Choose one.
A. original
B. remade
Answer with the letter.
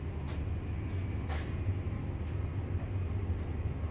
A